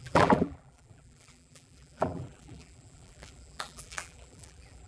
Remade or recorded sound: remade